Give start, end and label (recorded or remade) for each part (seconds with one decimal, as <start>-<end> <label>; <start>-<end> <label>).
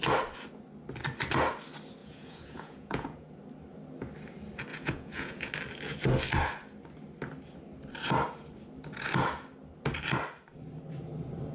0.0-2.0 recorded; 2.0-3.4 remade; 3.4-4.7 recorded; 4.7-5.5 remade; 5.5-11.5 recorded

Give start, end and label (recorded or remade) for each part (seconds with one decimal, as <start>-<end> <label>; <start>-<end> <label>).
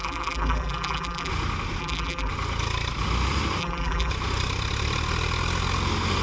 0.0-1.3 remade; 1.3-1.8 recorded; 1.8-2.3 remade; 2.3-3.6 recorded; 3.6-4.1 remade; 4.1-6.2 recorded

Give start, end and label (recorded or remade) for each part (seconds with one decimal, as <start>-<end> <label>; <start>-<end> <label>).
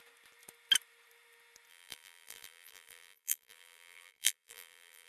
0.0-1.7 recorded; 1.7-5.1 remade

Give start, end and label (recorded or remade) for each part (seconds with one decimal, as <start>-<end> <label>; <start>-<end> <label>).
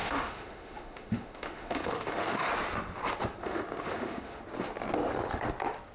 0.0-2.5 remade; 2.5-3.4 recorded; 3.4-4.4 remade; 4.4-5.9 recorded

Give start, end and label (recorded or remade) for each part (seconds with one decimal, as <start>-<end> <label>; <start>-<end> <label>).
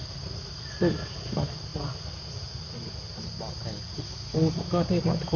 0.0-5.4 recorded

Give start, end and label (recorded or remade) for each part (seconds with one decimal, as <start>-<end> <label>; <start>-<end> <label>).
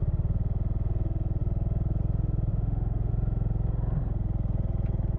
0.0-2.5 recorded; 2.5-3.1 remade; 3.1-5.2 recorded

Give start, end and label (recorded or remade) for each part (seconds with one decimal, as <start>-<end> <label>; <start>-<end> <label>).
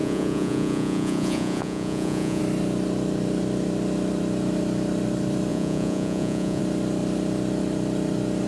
0.0-2.4 remade; 2.4-5.5 recorded; 5.5-6.6 remade; 6.6-8.5 recorded